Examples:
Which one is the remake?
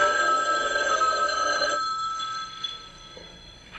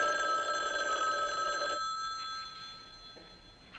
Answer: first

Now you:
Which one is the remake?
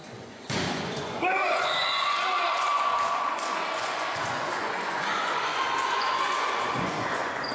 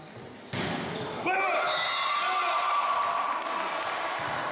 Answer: first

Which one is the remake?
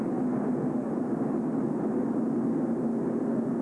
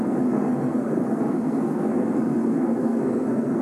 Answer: second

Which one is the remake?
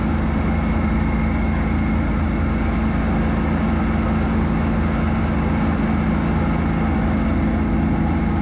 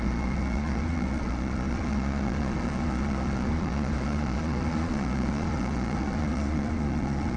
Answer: second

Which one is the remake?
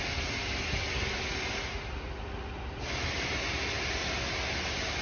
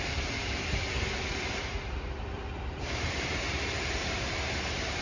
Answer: second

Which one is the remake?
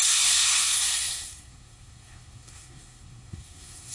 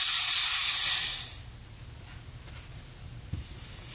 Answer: first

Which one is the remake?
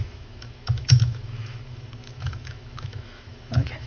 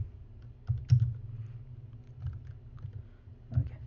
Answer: first